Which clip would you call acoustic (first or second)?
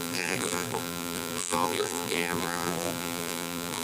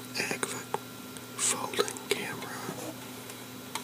second